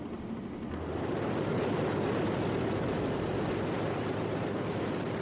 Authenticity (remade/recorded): recorded